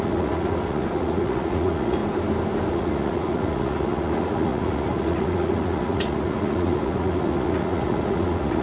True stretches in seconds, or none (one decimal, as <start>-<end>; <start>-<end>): 2.0-2.7